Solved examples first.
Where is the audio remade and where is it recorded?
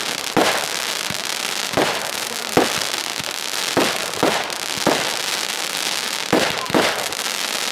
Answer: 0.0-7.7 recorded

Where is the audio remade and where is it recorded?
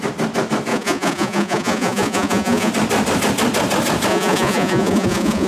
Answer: 0.0-0.7 recorded; 0.7-2.7 remade; 2.7-4.1 recorded; 4.1-5.5 remade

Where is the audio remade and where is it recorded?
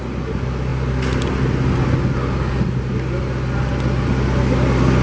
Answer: 0.0-5.0 recorded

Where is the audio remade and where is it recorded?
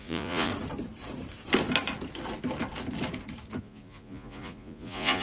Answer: 0.0-0.5 remade; 0.5-3.6 recorded; 3.6-5.2 remade